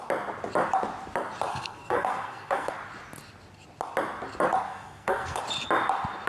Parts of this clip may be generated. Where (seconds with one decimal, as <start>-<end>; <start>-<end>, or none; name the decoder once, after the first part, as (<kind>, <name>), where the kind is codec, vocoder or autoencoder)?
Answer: 1.5-2.7 (codec, SNAC); 4.7-5.4